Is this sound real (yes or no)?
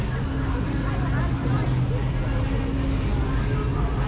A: yes